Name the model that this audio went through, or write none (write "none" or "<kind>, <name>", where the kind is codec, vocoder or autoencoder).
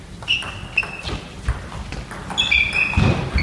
none